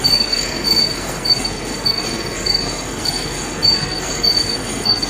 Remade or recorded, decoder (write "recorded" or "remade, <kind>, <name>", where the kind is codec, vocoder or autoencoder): remade, codec, SNAC